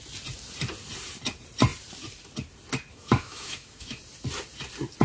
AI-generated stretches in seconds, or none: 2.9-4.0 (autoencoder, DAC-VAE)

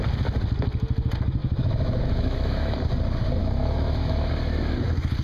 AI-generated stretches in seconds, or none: 1.4-2.8 (autoencoder, DAC-VAE); 3.4-4.3

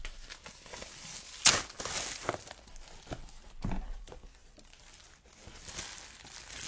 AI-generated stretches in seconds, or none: none

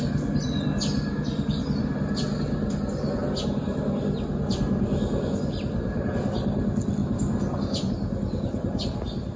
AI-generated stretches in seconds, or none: none

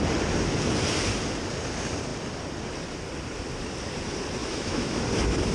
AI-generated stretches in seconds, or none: 4.4-5.0 (autoencoder, DAC-VAE)

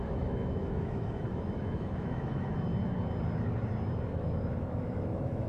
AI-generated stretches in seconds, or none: 0.0-2.7 (autoencoder, DAC-VAE); 4.1-5.5

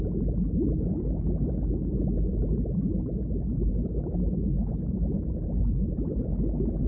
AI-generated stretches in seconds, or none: 3.9-5.3 (autoencoder, DAC-VAE)